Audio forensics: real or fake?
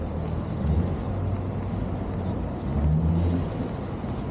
real